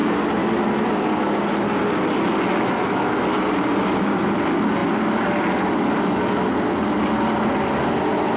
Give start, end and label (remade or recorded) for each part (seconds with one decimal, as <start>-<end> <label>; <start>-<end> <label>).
0.0-8.4 recorded